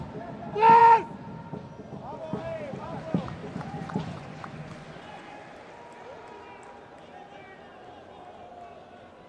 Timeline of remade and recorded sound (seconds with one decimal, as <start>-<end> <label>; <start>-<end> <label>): 0.0-3.4 recorded; 3.4-5.3 remade; 5.3-9.3 recorded